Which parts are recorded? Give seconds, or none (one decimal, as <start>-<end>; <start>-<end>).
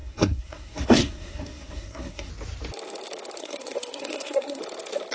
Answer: 2.3-3.4; 4.6-5.1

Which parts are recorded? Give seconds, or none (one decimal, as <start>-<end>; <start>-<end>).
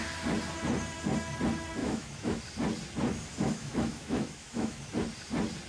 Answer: 0.0-1.8; 2.4-3.3; 4.8-5.7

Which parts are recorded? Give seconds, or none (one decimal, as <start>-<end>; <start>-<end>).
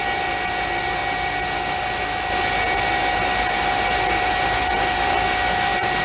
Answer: 0.0-6.0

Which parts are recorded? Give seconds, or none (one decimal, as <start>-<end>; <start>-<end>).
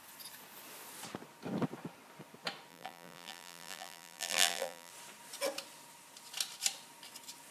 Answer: 0.0-2.7; 4.9-7.5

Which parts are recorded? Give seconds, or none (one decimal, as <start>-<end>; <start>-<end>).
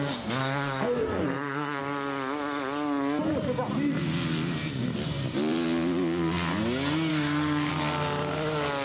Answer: 0.0-0.4; 1.8-7.1; 7.7-8.8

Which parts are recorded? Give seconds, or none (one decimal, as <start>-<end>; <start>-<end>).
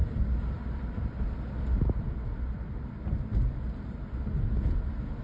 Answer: 0.0-5.2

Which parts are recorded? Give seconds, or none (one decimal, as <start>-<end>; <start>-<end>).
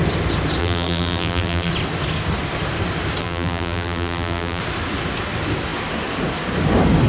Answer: 0.0-0.6; 1.7-3.2; 4.6-7.1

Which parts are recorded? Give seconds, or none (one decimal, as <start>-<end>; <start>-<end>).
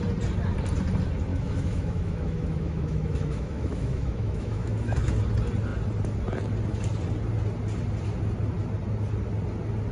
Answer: 0.0-1.3; 5.1-9.9